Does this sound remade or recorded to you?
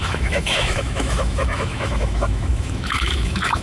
remade